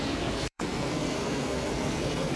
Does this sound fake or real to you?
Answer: fake